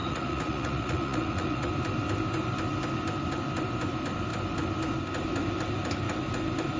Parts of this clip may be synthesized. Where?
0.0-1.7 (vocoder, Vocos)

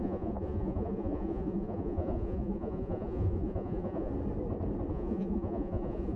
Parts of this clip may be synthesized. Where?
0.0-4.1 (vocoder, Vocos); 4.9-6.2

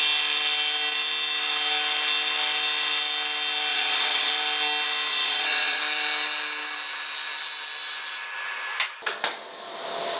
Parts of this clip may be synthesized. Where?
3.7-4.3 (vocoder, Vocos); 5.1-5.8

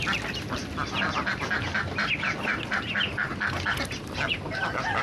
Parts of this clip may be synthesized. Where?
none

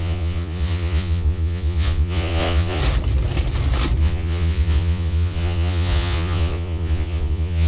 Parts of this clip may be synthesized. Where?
0.0-2.8 (vocoder, Vocos); 4.0-7.7